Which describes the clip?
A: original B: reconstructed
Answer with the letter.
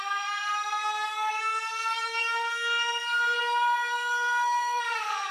B